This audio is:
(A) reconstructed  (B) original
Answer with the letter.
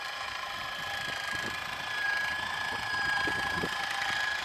B